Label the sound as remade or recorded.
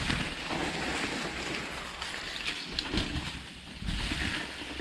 recorded